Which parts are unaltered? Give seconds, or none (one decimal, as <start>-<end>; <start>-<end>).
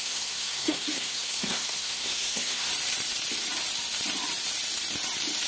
2.7-5.5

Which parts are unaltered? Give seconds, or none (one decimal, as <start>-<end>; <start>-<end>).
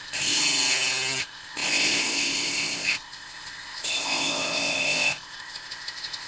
0.4-1.2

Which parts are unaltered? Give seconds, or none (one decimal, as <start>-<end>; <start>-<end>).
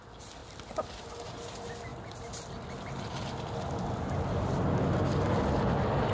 0.0-6.1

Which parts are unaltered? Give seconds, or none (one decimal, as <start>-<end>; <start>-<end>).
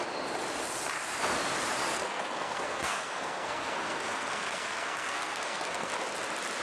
0.0-1.9; 5.9-6.6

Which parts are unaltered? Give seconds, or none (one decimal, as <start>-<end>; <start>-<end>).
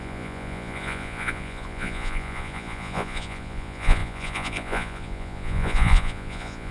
none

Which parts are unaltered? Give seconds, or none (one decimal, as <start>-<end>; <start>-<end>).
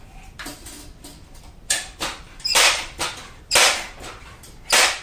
0.0-1.1; 3.4-5.0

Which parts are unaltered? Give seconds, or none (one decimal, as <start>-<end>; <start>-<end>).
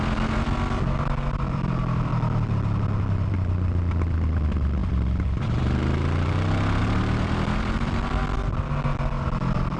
2.1-3.3; 8.2-9.1